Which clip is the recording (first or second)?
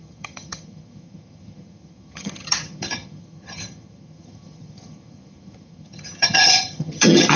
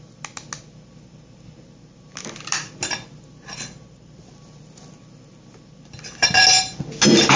second